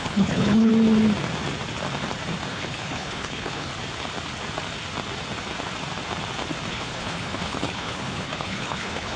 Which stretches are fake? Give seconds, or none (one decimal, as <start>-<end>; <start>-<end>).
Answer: 0.0-0.7; 2.5-3.7; 6.7-9.2